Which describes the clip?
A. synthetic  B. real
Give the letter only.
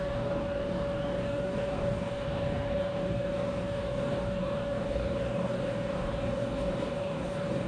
A